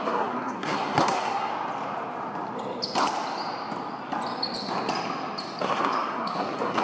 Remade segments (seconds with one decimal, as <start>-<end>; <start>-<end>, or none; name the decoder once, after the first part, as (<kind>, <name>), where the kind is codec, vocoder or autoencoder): 0.0-1.5 (codec, SNAC); 5.6-6.8